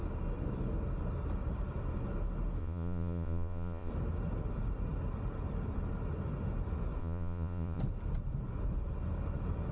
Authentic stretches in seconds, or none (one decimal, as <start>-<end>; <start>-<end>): 0.0-2.6; 3.9-7.0; 7.8-9.7